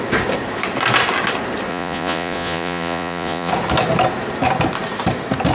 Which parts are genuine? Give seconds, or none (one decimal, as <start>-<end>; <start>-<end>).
0.0-1.7; 3.5-5.5